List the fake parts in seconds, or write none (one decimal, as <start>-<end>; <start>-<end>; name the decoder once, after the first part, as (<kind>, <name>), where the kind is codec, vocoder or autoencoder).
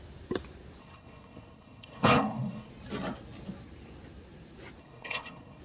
0.8-2.7 (codec, HILCodec); 4.8-5.6